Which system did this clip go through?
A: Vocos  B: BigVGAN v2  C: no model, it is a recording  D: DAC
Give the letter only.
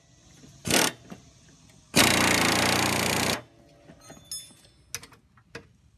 C